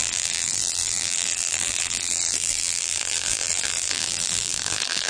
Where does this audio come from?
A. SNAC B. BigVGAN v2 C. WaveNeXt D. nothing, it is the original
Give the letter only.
B